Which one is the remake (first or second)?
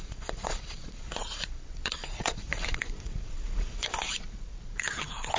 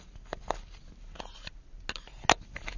first